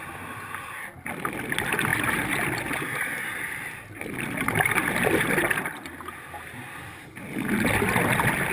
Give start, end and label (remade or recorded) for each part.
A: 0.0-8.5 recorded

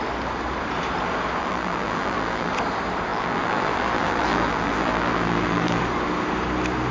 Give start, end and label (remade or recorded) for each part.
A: 0.0-1.4 recorded; 1.4-2.5 remade; 2.5-3.1 recorded; 3.1-5.8 remade; 5.8-6.9 recorded

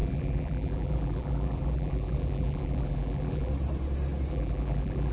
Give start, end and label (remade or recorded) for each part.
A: 0.0-3.5 remade; 3.5-4.3 recorded; 4.3-5.1 remade

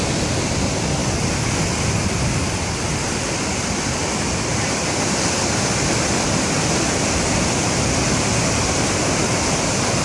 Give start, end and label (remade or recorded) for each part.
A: 0.0-10.0 recorded

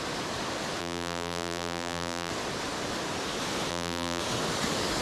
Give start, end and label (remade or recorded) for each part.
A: 0.0-0.8 recorded; 0.8-2.3 remade; 2.3-3.7 recorded; 3.7-4.2 remade; 4.2-5.0 recorded

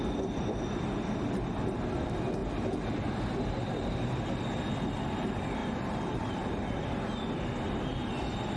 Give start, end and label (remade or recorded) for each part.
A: 0.0-2.4 recorded; 2.4-4.7 remade; 4.7-5.6 recorded; 5.6-6.2 remade; 6.2-8.6 recorded

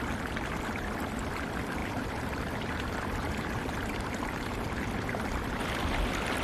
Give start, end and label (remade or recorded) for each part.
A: 0.0-1.8 recorded; 1.8-4.8 remade; 4.8-6.4 recorded

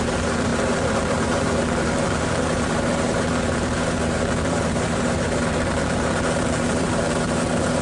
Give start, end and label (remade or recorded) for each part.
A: 0.0-7.8 remade